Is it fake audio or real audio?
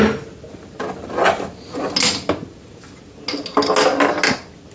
real